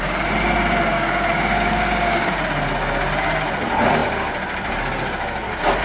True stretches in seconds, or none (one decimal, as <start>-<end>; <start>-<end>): 0.0-0.9; 2.3-5.8